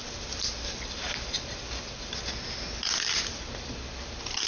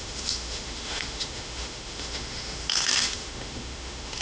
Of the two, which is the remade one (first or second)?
second